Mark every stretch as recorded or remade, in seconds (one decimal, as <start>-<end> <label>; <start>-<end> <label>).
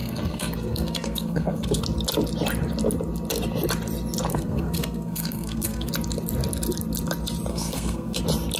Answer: 0.0-1.8 remade; 1.8-4.3 recorded; 4.3-5.9 remade; 5.9-7.5 recorded; 7.5-8.2 remade; 8.2-8.6 recorded